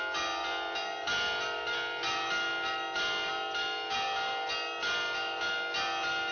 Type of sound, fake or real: real